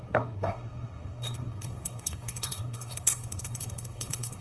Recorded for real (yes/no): no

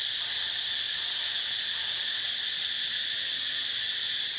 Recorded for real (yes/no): yes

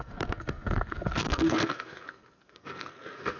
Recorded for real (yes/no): no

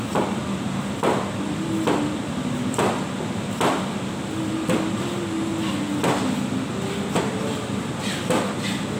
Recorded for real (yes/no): yes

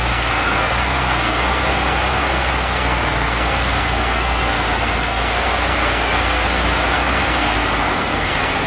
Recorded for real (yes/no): no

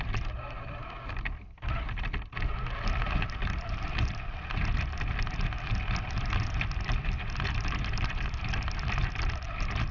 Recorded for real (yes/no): yes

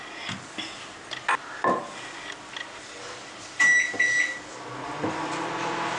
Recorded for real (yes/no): yes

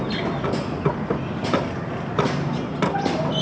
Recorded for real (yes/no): yes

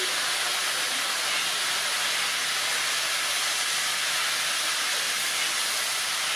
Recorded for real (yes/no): yes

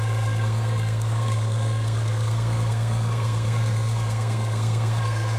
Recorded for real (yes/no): no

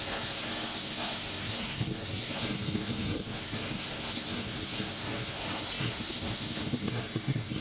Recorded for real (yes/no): no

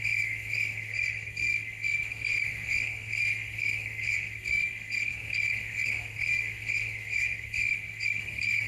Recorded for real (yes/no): no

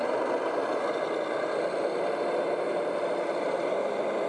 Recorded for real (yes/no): yes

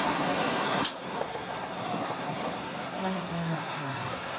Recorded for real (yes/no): no